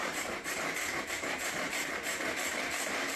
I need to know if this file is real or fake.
fake